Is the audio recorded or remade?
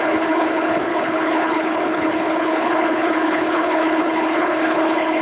remade